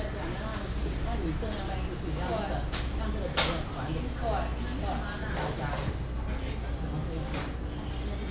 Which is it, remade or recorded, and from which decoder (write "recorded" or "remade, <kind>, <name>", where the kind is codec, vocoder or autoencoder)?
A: recorded